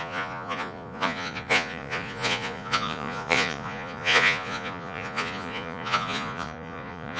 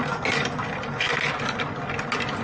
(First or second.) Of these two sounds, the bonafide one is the second